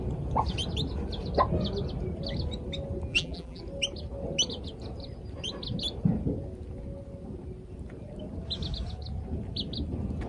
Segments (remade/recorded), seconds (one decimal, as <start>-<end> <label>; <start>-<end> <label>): 0.0-3.1 recorded; 3.1-3.6 remade; 3.6-10.3 recorded